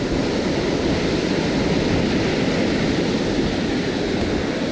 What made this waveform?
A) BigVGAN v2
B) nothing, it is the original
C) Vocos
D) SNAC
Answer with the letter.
B